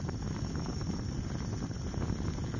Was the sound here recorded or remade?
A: recorded